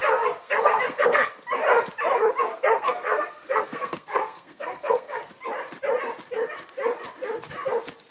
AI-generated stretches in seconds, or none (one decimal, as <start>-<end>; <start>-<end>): 0.0-1.3; 2.5-5.3